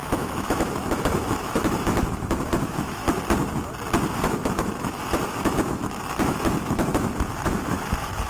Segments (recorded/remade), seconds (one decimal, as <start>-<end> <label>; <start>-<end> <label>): 0.0-3.0 remade; 3.0-4.2 recorded; 4.2-8.3 remade